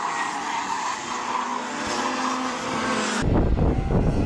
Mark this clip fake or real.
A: real